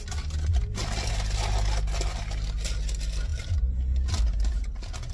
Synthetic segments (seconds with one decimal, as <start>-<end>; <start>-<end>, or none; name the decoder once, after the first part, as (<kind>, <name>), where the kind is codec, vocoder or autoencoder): 0.5-1.1 (vocoder, BigVGAN v2)